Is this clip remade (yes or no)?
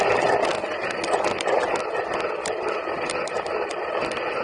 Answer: no